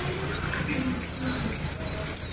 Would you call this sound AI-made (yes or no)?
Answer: no